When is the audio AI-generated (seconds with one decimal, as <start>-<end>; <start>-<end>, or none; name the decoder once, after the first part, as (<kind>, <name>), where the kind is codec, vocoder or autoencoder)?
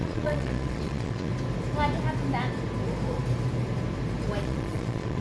0.0-1.3 (vocoder, Vocos); 4.4-5.2